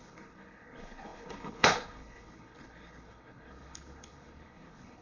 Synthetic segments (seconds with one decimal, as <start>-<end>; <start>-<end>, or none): 0.0-5.0